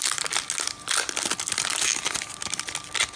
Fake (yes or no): no